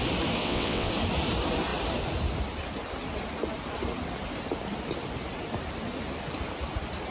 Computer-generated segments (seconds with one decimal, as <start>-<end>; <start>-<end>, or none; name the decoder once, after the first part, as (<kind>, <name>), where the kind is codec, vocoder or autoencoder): 0.4-0.9 (vocoder, WaveNeXt)